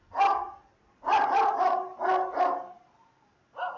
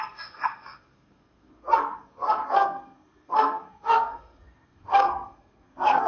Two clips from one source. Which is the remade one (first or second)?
second